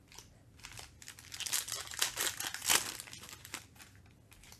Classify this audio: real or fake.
real